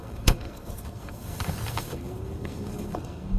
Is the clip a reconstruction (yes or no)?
yes